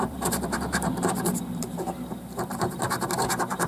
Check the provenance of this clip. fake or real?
fake